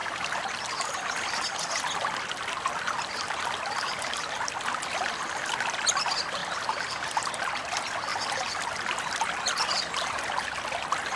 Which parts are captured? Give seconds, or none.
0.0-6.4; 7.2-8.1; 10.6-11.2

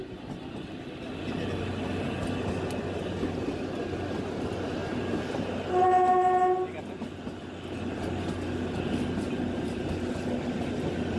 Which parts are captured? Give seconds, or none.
0.0-4.8; 5.7-11.2

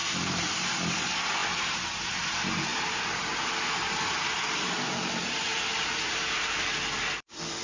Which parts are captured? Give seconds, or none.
0.7-2.7